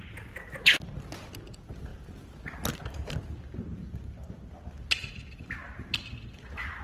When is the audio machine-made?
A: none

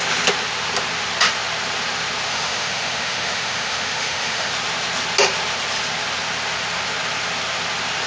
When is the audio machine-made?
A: 2.3-4.5 (autoencoder, DAC-VAE)

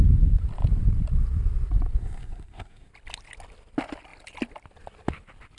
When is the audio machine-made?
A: 2.0-2.9 (codec, SNAC)

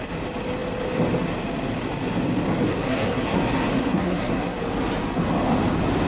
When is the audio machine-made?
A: 2.7-3.4 (codec, SNAC); 3.8-4.6